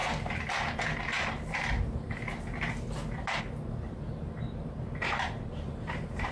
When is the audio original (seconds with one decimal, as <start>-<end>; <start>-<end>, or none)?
0.0-3.4